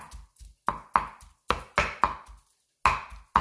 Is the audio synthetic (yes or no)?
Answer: no